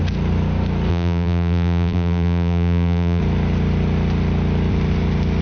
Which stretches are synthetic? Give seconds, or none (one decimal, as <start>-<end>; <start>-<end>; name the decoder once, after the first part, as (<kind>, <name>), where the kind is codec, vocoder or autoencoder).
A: 0.9-3.2 (vocoder, BigVGAN v2)